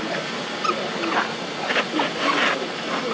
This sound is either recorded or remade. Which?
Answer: recorded